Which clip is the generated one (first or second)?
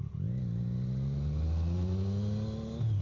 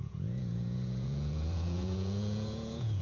second